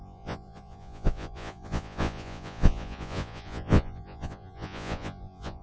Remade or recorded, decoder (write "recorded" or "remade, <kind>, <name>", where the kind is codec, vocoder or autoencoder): remade, vocoder, Vocos